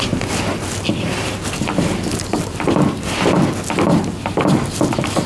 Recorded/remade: recorded